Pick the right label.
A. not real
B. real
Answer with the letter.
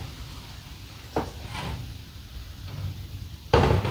B